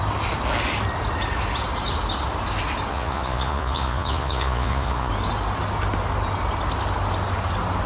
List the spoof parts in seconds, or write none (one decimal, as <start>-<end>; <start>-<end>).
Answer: 2.9-5.1